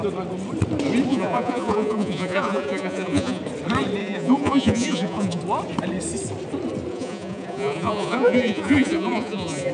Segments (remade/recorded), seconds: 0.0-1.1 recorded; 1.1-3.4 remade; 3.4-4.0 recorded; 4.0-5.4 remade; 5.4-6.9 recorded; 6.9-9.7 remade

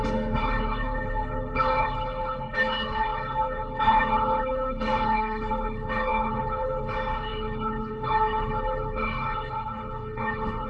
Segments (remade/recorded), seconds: 0.0-10.7 remade

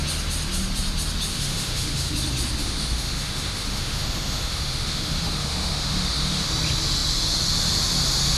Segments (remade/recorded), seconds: 0.0-1.3 recorded; 1.3-2.1 remade; 2.1-2.6 recorded; 2.6-6.5 remade; 6.5-8.4 recorded

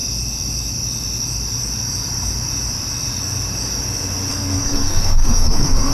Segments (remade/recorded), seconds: 0.0-4.3 recorded; 4.3-5.9 remade

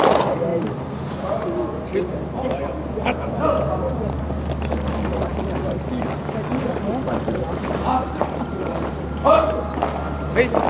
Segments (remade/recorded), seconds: 0.0-0.5 recorded; 0.5-4.2 remade; 4.2-6.5 recorded; 6.5-9.4 remade; 9.4-10.7 recorded

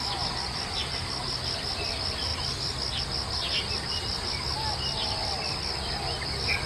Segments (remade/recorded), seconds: 0.0-6.7 recorded

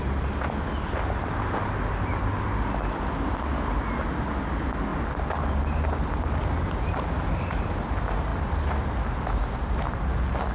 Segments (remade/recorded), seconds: 0.0-10.5 recorded

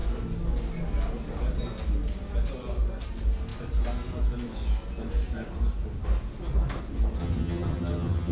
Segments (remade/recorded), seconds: 0.0-7.2 recorded; 7.2-8.3 remade